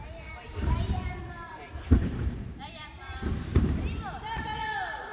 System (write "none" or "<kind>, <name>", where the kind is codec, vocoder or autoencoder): vocoder, BigVGAN v2